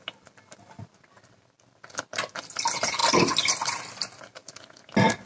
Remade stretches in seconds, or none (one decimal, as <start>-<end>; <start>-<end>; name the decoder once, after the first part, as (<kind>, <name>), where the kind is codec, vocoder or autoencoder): none